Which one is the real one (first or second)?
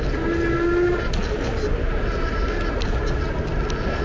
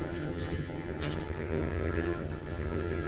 first